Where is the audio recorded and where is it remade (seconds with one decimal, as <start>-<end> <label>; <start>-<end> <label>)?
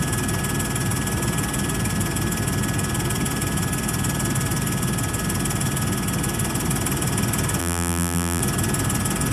0.0-7.6 recorded; 7.6-8.4 remade; 8.4-9.3 recorded